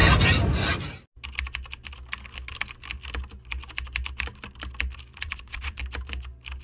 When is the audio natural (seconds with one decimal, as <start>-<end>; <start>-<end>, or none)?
0.0-5.1; 5.8-6.6